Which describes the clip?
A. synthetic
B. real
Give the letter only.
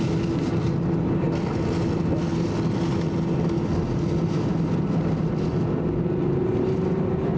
B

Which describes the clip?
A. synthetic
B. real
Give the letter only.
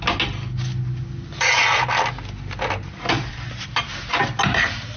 B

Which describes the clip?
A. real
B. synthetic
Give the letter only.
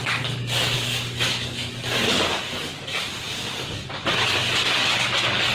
B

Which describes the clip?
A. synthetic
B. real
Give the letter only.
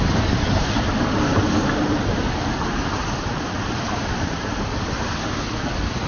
B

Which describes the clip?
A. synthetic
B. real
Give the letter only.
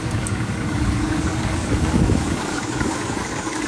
A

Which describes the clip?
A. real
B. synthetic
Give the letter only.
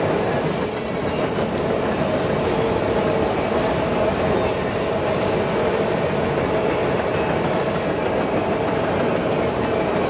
A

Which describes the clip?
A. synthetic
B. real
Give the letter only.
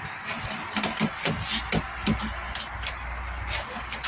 B